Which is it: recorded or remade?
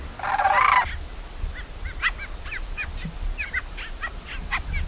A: recorded